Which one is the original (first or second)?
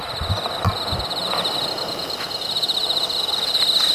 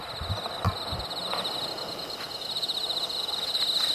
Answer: second